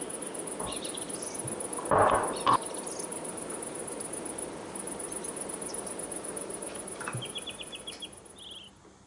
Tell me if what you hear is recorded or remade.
recorded